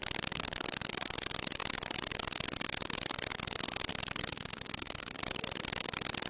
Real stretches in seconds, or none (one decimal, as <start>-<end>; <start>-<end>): 0.0-4.3; 5.2-6.3